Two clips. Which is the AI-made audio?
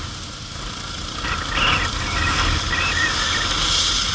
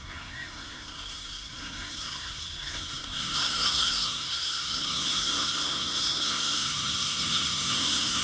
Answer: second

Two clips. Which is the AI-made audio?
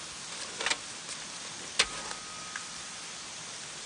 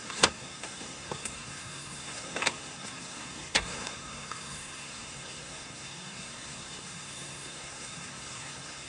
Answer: second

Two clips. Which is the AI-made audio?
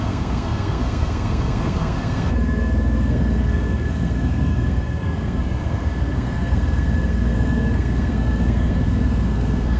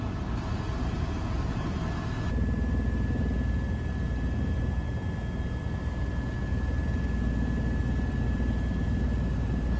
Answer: first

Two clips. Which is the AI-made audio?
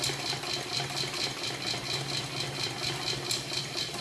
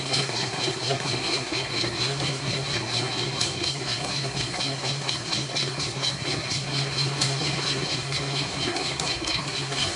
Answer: second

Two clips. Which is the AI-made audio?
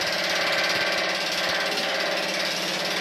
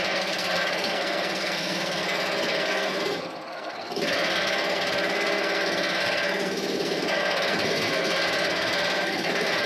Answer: second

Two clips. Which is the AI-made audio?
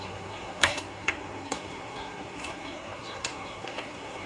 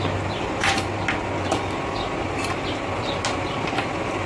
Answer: first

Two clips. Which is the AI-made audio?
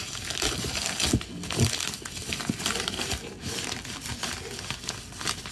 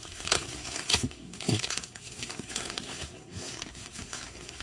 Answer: second